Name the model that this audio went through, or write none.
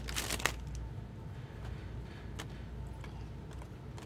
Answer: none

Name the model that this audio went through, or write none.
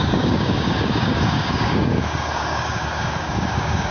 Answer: codec, DAC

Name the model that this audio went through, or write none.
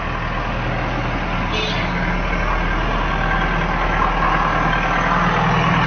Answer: none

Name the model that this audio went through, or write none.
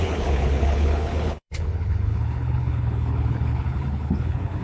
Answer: codec, HILCodec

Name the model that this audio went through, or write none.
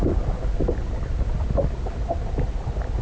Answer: none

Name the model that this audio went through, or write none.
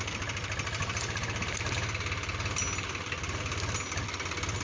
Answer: none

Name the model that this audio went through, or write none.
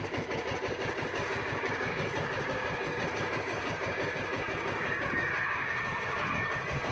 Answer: codec, DAC